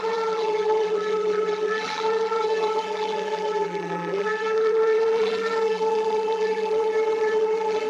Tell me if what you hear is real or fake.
fake